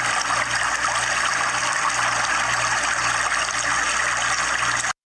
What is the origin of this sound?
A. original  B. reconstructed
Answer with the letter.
A